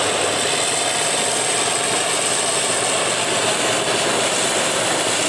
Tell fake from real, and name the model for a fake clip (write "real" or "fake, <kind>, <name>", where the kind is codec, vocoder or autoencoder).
real